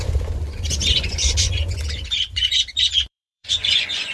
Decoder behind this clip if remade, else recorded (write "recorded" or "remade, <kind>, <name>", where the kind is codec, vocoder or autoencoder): remade, vocoder, Vocos